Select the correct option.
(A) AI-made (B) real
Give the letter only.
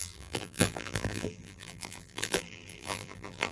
A